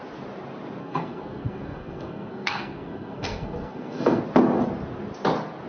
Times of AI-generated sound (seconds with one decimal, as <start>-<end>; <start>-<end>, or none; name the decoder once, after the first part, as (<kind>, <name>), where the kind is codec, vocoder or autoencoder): 0.8-4.2 (codec, SNAC)